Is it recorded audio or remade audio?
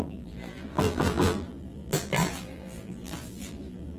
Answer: remade